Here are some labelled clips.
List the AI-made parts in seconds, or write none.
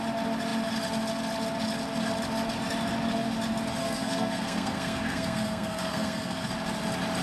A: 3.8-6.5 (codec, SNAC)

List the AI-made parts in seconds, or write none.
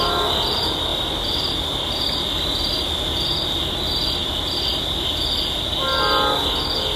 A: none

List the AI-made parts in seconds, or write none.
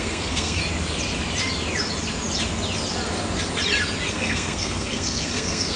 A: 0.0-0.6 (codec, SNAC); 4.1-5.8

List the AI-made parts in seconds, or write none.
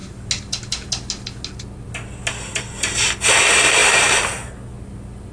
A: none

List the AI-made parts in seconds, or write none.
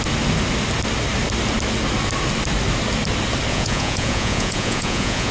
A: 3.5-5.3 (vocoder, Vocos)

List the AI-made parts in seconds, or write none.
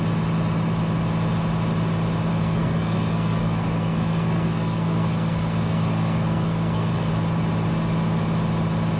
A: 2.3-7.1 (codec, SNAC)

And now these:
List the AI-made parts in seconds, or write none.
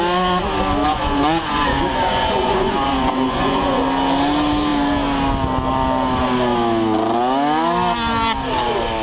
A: 0.9-3.8 (vocoder, Vocos)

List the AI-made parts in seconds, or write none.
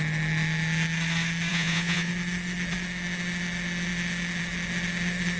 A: 1.5-2.1 (vocoder, Vocos)